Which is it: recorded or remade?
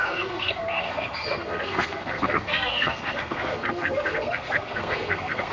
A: remade